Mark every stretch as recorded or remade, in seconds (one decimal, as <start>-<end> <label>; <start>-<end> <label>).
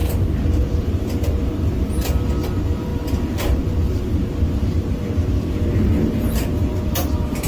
0.0-7.5 remade